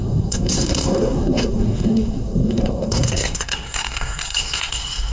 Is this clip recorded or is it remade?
remade